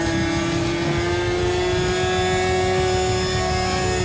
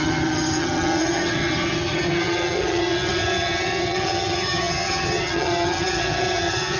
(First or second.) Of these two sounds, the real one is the first